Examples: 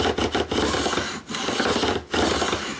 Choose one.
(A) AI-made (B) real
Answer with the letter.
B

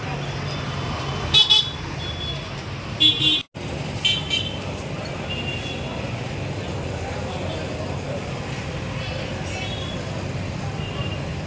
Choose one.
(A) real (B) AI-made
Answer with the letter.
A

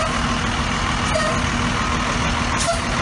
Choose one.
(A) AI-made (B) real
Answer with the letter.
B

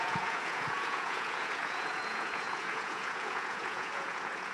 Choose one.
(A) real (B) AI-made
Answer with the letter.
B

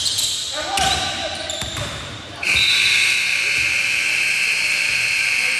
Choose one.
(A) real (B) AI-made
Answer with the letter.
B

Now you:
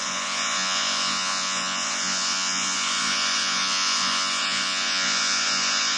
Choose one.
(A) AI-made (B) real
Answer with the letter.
A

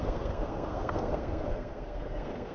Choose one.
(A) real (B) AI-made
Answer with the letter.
B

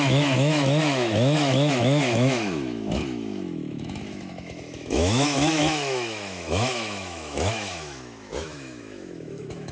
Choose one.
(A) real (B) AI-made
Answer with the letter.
B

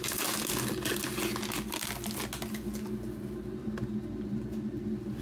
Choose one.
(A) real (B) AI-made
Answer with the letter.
A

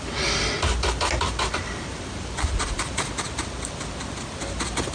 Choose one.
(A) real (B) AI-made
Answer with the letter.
A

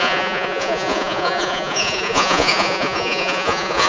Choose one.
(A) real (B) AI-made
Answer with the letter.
B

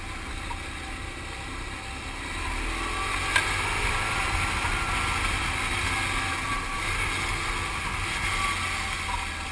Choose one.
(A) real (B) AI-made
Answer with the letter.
A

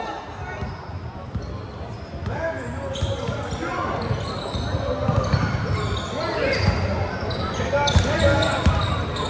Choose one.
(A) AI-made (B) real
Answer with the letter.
B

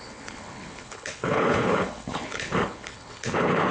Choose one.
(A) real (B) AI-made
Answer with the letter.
B